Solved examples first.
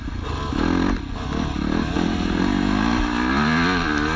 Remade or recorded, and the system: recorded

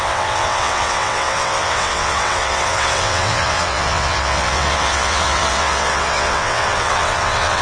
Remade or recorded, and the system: remade, vocoder, WaveNeXt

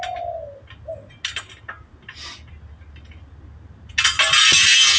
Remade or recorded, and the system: recorded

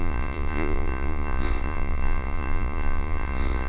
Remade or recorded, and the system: remade, vocoder, Vocos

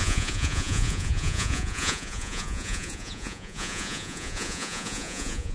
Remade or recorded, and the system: remade, vocoder, Vocos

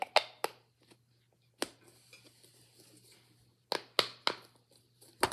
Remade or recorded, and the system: recorded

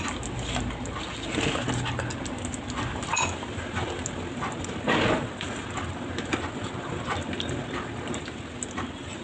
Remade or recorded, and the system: recorded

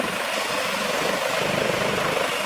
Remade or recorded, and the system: recorded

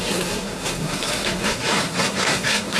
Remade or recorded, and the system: remade, codec, SNAC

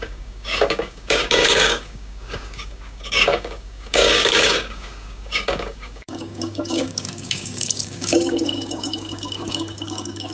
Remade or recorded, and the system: remade, codec, DAC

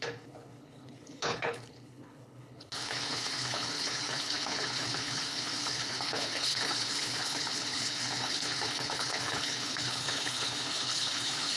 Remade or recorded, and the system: remade, codec, HILCodec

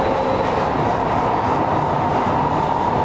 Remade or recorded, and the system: recorded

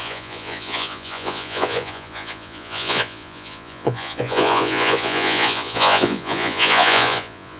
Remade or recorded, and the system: remade, vocoder, Vocos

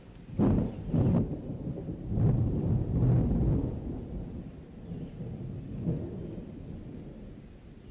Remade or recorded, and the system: recorded